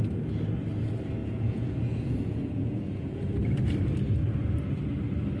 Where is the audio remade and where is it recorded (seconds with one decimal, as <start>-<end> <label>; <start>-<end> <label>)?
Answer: 0.0-1.2 recorded; 1.2-3.3 remade; 3.3-5.4 recorded